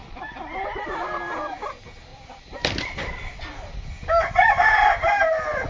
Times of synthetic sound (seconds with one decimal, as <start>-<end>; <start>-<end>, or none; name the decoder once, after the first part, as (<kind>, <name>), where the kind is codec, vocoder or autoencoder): 0.0-1.5 (vocoder, BigVGAN v2); 2.1-5.7